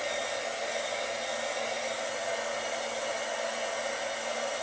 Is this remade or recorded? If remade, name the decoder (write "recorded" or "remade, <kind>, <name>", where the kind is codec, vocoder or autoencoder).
recorded